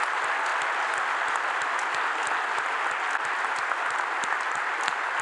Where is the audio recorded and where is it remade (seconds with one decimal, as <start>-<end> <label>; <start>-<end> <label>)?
0.0-5.2 recorded